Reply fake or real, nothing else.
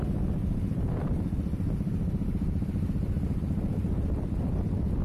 real